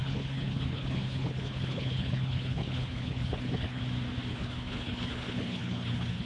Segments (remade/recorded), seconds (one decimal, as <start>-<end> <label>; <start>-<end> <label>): 0.0-3.8 remade; 3.8-4.3 recorded; 4.3-6.3 remade